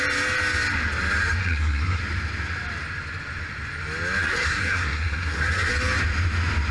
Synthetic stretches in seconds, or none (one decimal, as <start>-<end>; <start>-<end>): 1.4-2.0; 4.2-5.7